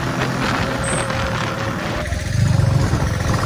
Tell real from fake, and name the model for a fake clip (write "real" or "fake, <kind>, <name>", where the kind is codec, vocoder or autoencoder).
real